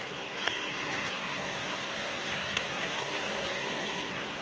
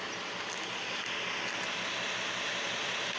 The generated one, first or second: first